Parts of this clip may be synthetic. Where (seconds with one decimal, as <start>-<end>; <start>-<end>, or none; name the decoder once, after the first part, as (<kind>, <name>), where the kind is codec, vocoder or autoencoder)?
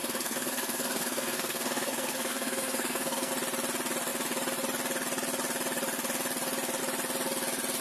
0.0-3.3 (codec, SNAC)